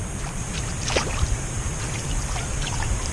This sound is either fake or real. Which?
real